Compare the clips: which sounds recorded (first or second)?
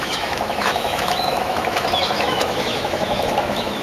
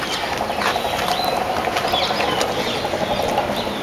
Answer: second